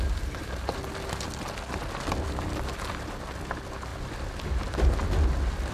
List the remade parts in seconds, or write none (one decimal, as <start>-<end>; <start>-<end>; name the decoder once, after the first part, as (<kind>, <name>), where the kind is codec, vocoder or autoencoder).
none